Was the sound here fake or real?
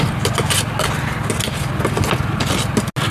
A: real